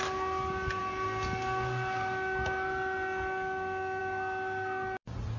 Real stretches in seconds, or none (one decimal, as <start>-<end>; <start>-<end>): 0.0-5.4